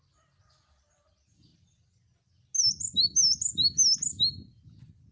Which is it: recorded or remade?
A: recorded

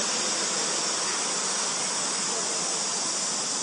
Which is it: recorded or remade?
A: recorded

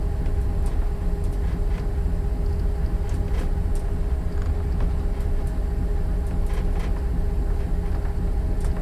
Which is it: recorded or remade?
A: recorded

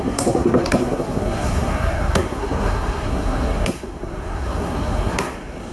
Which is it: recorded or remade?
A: remade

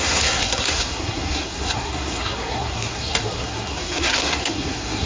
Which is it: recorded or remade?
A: remade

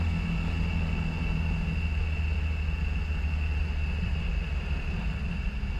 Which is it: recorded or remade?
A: recorded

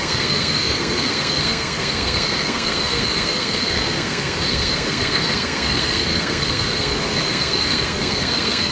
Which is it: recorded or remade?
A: remade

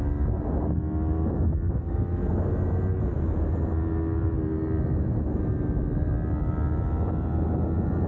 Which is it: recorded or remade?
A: recorded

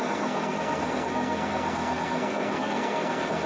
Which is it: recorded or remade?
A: remade